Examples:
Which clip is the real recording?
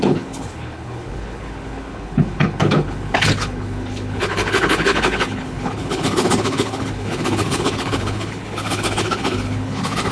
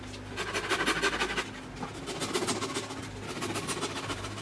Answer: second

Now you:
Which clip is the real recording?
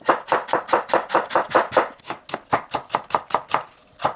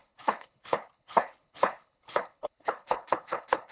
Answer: first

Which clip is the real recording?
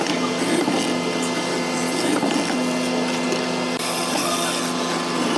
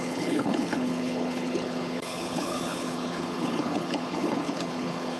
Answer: first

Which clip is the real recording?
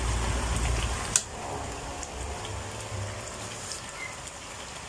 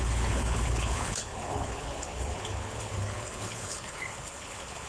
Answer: first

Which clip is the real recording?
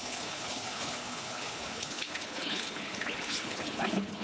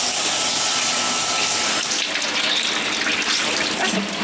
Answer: second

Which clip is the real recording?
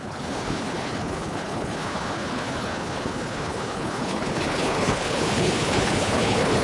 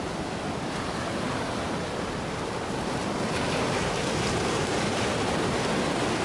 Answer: second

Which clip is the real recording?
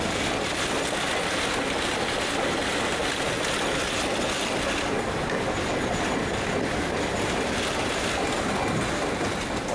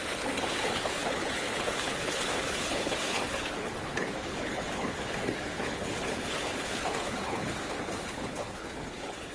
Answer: first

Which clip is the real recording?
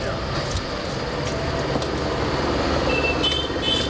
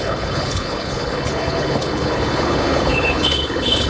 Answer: first